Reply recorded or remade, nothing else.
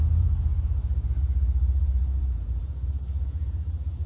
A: remade